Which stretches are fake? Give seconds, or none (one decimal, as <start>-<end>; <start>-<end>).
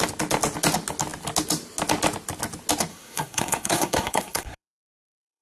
2.9-5.4